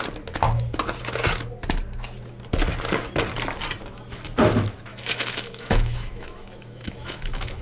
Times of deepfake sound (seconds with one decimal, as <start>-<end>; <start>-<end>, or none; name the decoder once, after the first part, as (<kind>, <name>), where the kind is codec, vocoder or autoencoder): 4.9-7.6 (autoencoder, DAC-VAE)